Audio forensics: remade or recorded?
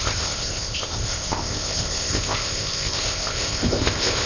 remade